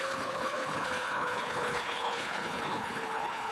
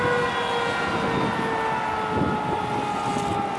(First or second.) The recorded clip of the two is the second